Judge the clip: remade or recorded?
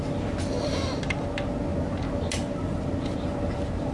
recorded